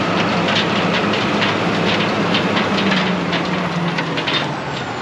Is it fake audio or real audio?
real